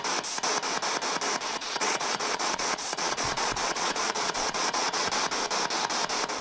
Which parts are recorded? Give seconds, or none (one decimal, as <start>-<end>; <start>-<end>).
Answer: 0.0-1.5; 5.1-6.4